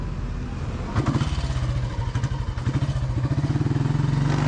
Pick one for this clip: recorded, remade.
recorded